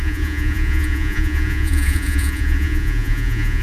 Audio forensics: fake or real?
fake